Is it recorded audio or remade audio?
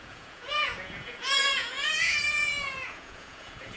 remade